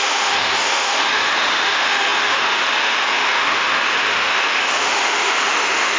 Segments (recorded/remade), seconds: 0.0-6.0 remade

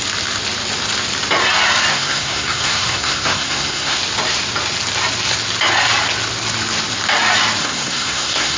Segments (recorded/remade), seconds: 0.0-1.9 recorded; 1.9-4.0 remade; 4.0-7.6 recorded; 7.6-8.6 remade

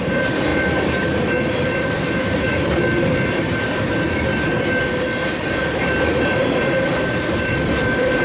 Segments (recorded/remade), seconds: 0.0-4.3 remade; 4.3-4.8 recorded; 4.8-8.2 remade